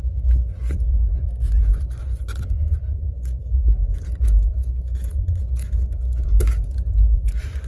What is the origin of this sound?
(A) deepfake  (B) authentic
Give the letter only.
A